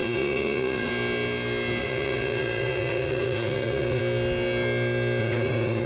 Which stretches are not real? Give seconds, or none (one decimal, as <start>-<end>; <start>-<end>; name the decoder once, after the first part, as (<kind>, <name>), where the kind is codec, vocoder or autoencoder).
0.0-0.9 (vocoder, Vocos); 1.8-4.0; 5.2-5.9